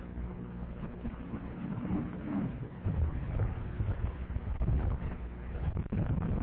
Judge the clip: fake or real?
fake